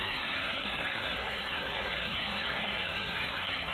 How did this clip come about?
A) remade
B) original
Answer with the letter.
A